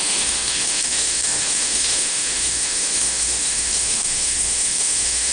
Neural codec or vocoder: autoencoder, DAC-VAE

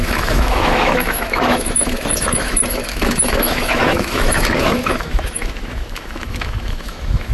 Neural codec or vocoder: autoencoder, DAC-VAE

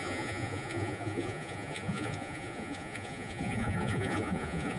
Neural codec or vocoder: vocoder, Vocos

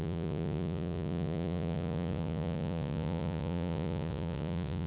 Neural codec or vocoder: vocoder, Vocos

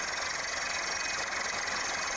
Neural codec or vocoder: none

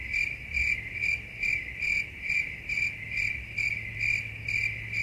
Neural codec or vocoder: none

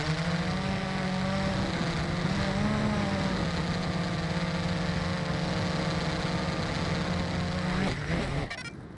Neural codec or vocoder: none